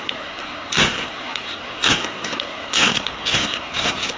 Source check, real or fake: fake